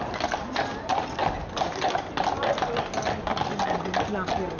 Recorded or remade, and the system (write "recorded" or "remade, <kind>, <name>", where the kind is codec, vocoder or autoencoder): recorded